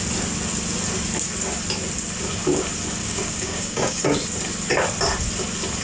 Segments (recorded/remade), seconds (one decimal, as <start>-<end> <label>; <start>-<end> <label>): 0.0-3.0 recorded; 3.0-4.0 remade; 4.0-5.8 recorded